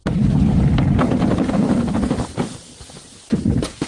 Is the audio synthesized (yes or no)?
no